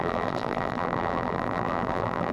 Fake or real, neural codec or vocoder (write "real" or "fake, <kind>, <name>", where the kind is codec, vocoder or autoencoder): fake, vocoder, BigVGAN v2